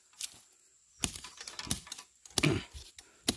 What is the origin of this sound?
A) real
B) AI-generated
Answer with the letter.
A